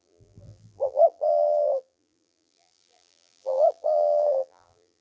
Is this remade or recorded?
remade